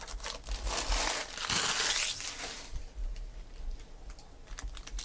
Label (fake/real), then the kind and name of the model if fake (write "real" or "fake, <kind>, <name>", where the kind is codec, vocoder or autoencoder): real